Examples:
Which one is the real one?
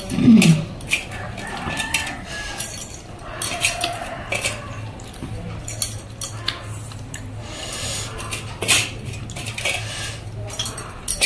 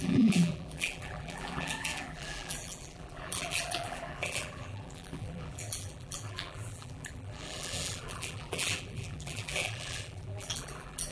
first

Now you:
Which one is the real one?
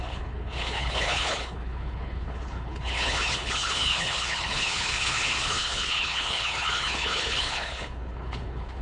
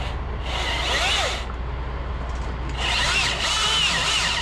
second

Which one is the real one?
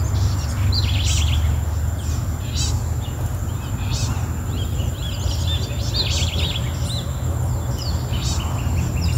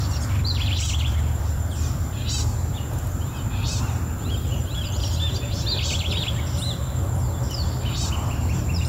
first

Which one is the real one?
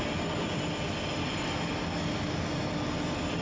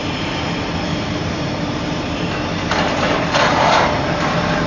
first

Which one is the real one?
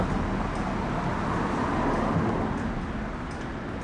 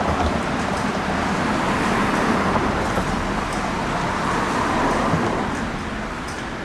first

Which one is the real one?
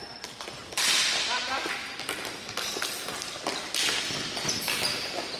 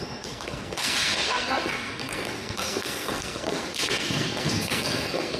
first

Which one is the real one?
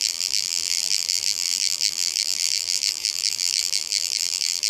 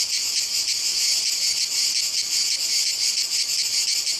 second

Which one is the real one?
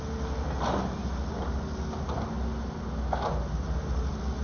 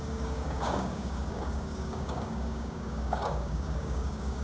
first